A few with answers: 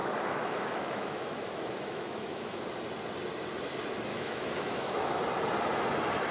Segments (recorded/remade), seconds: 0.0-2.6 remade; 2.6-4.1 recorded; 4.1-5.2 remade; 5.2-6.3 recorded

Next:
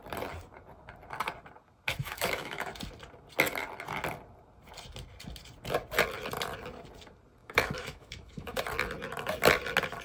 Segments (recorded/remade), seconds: 0.0-2.0 recorded; 2.0-2.7 remade; 2.7-7.4 recorded; 7.4-8.6 remade; 8.6-10.0 recorded

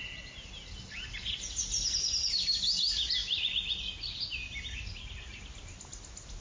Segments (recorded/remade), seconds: 0.0-6.4 recorded